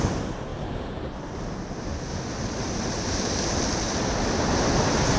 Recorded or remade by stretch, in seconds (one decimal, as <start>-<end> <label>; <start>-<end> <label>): 0.0-5.2 recorded